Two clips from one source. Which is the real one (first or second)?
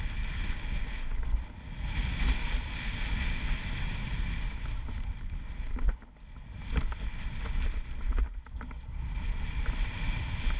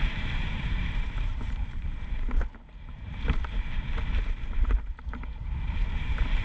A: first